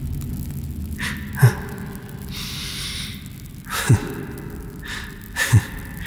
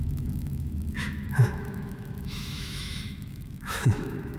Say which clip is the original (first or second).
first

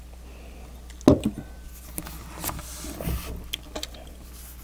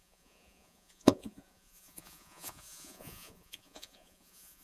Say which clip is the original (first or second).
first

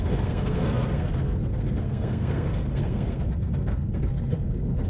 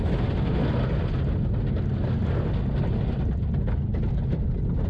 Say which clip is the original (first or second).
second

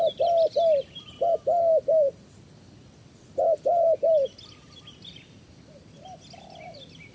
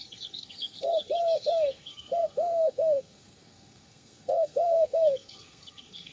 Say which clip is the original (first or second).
first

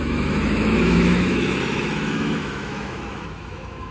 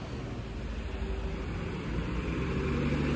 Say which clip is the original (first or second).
second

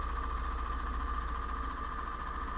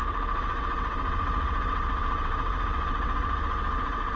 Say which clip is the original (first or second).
first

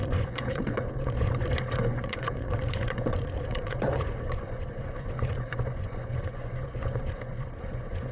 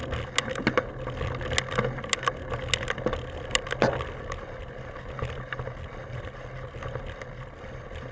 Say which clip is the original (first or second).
second